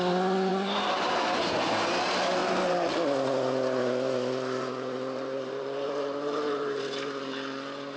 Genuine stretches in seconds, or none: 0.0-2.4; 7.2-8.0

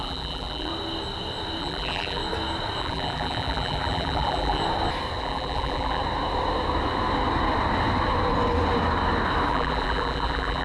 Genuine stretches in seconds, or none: 0.7-1.6; 2.2-2.8; 4.6-5.2; 6.0-9.5

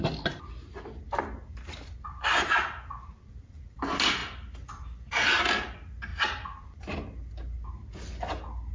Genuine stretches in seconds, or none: 0.0-8.7

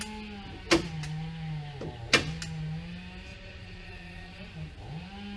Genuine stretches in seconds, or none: 0.0-3.3; 4.5-5.4

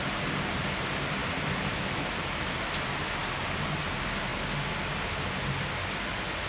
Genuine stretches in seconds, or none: 0.0-3.2; 3.8-6.5

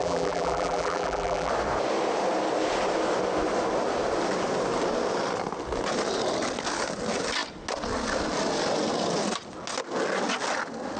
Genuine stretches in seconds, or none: 1.5-11.0